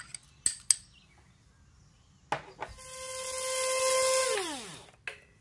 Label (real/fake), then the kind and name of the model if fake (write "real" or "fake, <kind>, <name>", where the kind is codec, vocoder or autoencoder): real